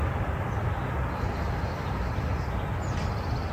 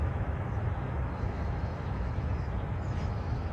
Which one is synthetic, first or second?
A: second